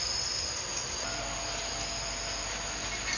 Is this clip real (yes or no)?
yes